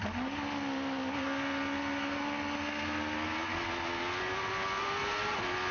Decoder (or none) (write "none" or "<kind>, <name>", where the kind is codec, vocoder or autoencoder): none